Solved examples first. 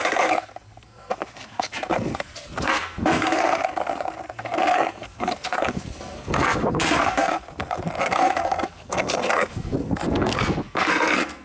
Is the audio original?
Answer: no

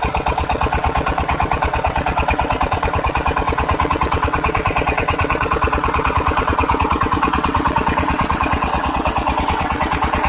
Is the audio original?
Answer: no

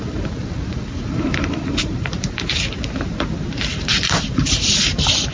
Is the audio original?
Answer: no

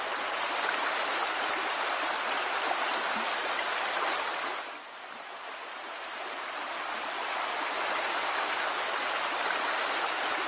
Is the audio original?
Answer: yes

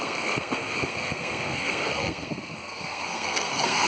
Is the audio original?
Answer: no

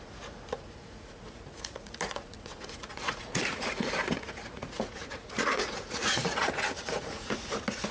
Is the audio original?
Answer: no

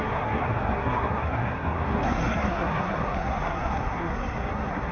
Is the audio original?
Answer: no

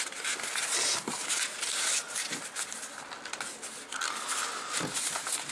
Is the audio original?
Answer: yes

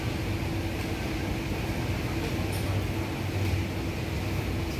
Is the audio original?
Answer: yes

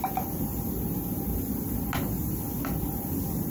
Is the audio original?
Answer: yes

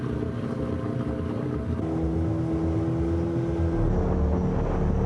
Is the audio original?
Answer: yes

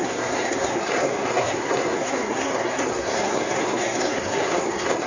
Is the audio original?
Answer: no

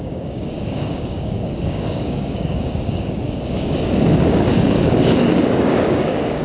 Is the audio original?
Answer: no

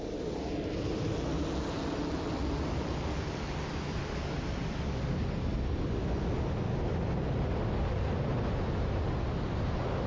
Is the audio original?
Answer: yes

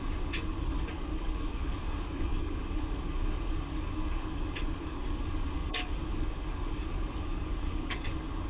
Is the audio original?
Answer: no